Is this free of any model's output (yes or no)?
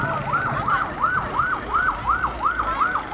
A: yes